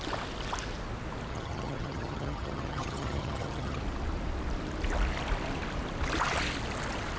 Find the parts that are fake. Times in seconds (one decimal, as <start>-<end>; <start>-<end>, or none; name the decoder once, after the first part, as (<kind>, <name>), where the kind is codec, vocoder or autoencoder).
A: 1.3-3.8 (vocoder, HiFi-GAN)